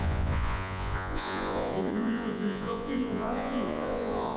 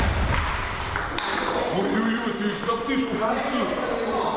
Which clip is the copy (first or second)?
first